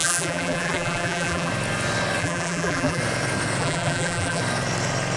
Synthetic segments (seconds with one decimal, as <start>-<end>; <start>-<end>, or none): 0.0-1.5; 2.2-3.0; 3.6-4.4